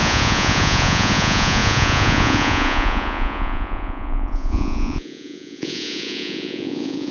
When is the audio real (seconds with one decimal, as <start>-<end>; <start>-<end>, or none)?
none